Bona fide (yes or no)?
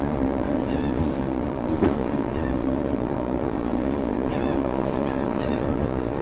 no